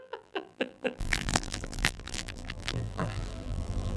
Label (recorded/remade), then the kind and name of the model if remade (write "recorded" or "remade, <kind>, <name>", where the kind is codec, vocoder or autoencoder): remade, vocoder, BigVGAN v2